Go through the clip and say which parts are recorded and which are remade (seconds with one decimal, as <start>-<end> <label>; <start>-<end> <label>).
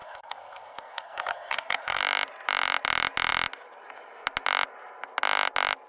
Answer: 0.0-2.0 remade; 2.0-5.9 recorded